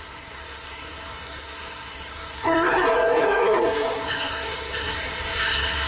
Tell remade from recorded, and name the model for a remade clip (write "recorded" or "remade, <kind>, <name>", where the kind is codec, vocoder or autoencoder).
remade, codec, SNAC